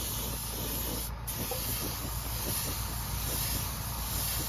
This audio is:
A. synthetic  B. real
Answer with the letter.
B